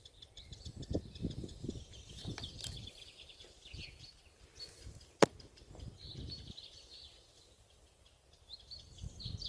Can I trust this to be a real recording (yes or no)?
no